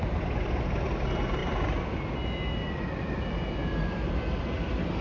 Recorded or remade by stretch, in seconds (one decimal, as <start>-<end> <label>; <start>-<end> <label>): 0.0-5.0 recorded